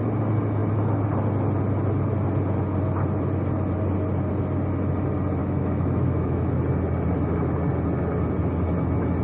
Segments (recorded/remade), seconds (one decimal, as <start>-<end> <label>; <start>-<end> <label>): 0.0-5.4 recorded; 5.4-6.5 remade; 6.5-9.2 recorded